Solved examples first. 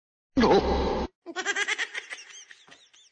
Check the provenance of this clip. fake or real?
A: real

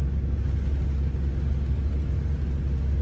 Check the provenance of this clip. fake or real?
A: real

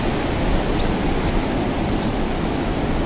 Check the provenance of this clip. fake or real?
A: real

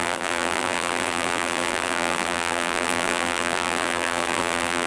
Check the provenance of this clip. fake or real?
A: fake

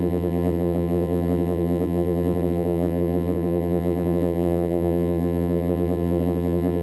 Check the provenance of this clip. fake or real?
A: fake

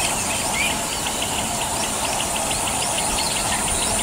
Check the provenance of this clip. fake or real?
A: real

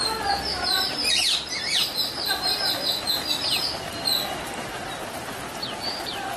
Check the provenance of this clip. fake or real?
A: fake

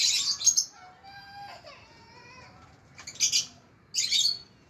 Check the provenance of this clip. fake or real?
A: real